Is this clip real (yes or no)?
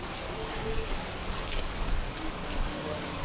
no